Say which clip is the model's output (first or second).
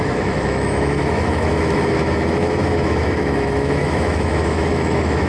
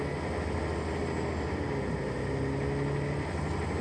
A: first